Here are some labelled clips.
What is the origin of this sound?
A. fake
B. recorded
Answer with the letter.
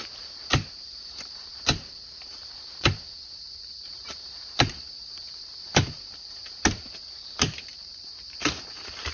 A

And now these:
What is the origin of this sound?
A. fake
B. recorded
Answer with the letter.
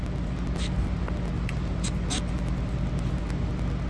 B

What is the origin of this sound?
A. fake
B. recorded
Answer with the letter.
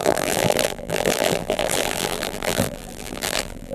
A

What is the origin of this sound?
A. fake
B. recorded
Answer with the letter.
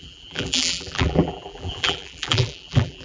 A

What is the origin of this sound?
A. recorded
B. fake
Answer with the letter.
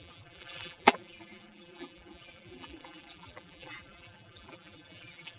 B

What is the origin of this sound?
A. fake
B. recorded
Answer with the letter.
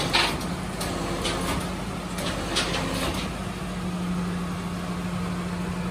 B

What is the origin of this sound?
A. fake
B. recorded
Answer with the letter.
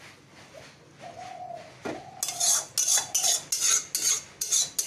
B